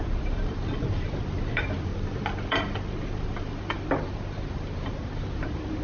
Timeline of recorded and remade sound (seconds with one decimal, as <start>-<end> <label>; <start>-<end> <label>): 0.0-1.9 remade; 1.9-2.5 recorded; 2.5-5.8 remade